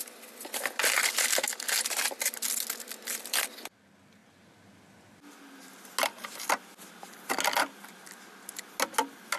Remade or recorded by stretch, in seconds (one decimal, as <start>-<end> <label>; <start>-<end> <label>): 0.0-9.4 recorded